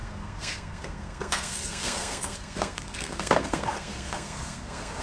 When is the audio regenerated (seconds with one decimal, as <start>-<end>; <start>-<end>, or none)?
0.0-5.0